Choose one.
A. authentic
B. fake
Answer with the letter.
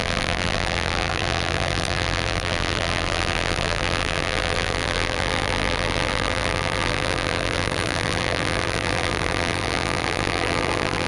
B